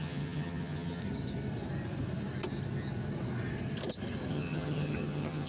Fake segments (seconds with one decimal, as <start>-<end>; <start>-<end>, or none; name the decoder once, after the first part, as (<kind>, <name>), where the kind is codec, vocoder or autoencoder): 0.0-1.0 (vocoder, HiFi-GAN); 4.3-5.5